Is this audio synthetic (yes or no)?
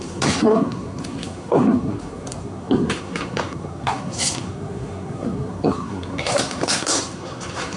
yes